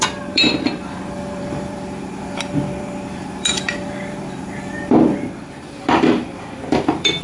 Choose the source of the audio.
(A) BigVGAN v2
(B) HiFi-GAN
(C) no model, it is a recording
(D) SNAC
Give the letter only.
A